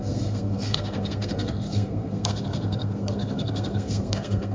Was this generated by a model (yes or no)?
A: yes